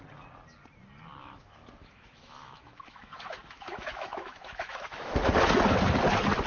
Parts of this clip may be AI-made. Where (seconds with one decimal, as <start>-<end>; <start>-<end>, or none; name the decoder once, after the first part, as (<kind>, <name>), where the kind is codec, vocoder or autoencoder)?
1.2-5.1 (autoencoder, DAC-VAE)